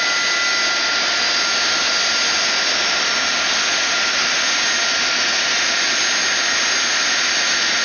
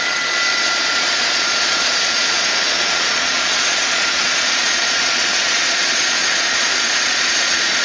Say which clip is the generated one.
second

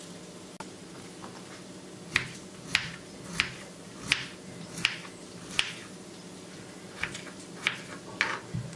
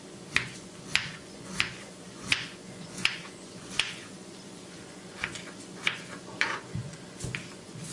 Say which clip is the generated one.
second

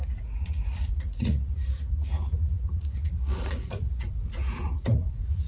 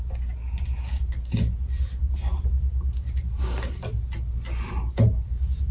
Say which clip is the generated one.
first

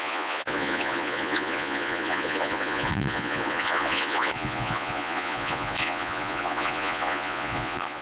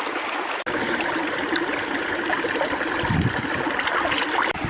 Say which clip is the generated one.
first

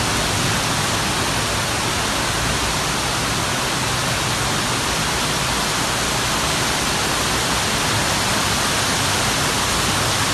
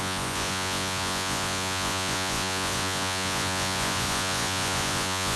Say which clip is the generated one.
second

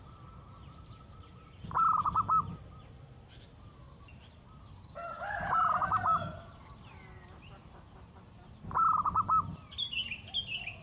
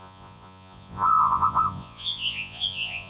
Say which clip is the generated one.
second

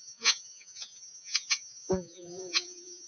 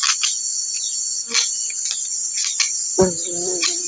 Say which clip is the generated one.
first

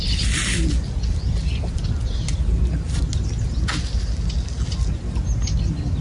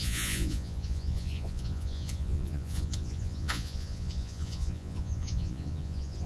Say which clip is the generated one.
second